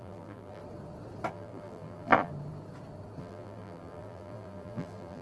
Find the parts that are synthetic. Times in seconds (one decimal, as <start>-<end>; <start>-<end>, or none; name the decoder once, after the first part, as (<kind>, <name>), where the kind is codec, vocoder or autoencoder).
0.0-0.6 (vocoder, BigVGAN v2); 1.3-2.3; 3.2-5.2